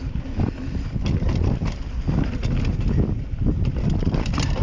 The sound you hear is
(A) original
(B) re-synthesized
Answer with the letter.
A